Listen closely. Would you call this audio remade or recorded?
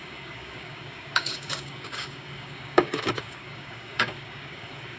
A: remade